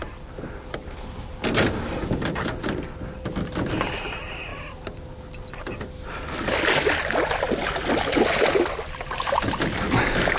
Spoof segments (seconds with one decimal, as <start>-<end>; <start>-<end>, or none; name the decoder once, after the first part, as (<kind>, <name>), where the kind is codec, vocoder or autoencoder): none